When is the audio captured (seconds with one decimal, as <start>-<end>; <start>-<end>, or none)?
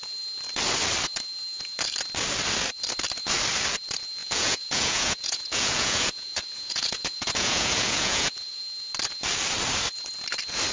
0.0-4.2; 8.6-10.7